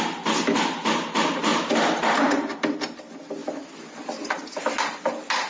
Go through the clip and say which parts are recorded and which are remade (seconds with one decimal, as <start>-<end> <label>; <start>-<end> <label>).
0.0-5.5 recorded